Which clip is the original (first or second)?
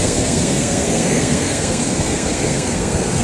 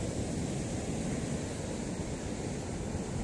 second